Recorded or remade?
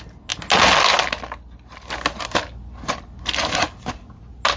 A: recorded